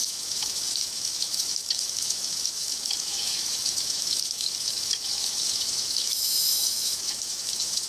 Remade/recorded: remade